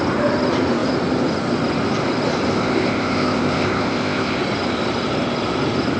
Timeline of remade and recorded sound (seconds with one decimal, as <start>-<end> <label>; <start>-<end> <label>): 0.0-2.5 recorded; 2.5-4.4 remade; 4.4-6.0 recorded